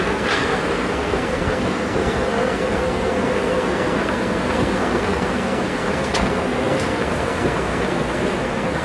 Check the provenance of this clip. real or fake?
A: fake